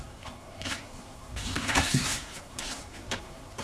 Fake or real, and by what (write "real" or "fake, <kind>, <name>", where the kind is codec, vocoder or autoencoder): fake, codec, SNAC